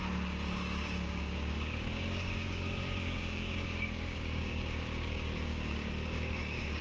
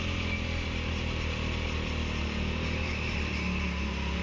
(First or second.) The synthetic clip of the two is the first